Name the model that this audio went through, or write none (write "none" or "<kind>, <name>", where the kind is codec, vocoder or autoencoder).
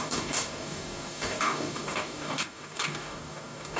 codec, DAC